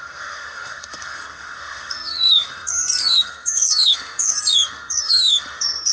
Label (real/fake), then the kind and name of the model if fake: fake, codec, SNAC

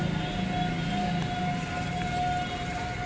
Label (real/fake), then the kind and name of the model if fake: real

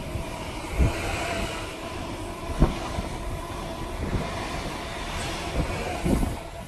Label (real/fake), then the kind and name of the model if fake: real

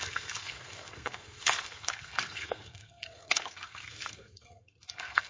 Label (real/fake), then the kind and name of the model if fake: fake, codec, SNAC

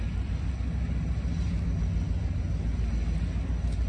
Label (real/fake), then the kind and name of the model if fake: real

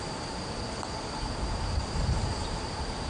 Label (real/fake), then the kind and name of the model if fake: real